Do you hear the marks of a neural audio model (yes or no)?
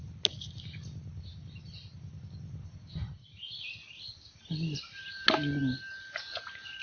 no